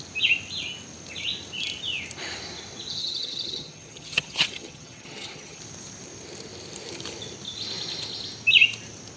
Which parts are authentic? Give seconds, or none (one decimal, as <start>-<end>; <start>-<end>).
0.0-3.0; 5.6-9.2